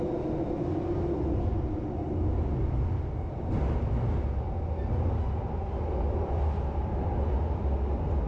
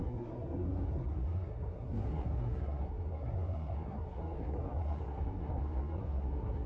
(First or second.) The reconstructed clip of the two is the second